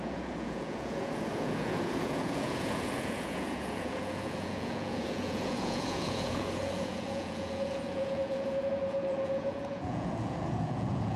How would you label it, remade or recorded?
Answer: remade